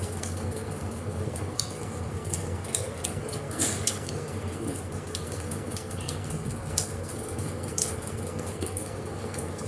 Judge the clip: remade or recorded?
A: remade